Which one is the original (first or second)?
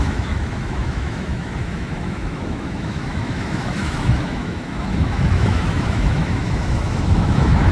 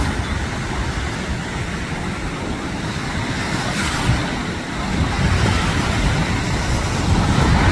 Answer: second